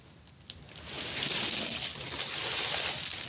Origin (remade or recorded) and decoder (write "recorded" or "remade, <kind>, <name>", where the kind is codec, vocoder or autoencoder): recorded